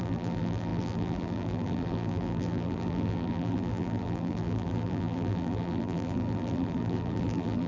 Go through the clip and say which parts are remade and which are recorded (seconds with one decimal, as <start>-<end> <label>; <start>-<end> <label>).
0.0-7.7 remade